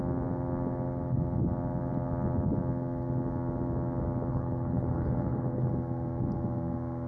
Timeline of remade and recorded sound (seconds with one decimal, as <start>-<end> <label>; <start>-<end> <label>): 0.0-4.3 recorded; 4.3-5.7 remade; 5.7-7.1 recorded